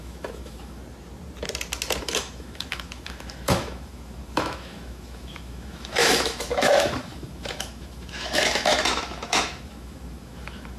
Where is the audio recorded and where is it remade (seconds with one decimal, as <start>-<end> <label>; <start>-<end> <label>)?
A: 0.0-0.8 remade; 0.8-2.0 recorded; 2.0-10.8 remade